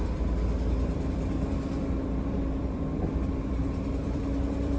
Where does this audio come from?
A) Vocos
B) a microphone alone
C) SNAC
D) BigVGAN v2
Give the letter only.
D